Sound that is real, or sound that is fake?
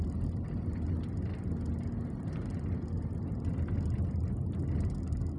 real